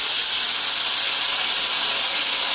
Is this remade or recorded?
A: recorded